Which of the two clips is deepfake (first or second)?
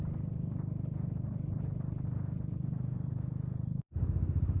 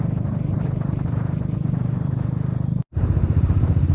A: second